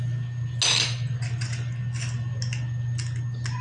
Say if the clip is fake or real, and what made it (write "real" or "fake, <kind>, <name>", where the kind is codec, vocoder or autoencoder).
real